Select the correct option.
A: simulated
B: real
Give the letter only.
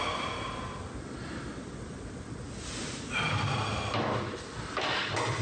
B